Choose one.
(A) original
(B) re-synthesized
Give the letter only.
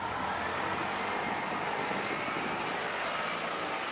A